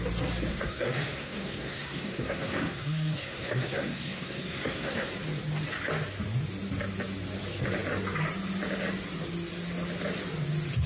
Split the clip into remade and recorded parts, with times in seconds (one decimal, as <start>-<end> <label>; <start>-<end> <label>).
0.0-0.5 recorded; 0.5-5.1 remade; 5.1-10.9 recorded